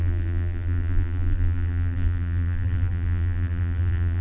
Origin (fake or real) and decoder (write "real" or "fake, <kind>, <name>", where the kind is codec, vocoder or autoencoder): fake, vocoder, BigVGAN v2